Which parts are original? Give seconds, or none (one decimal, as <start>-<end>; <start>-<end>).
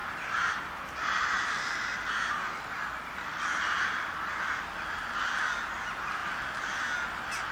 0.0-7.5